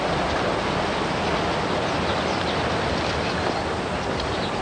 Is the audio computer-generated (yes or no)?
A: no